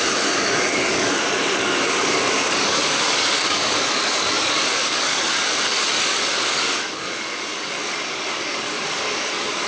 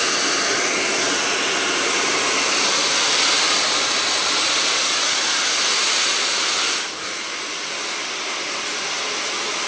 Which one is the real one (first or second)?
second